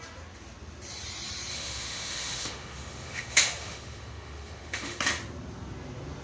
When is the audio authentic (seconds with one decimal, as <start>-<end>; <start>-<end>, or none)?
0.0-1.5; 5.0-6.2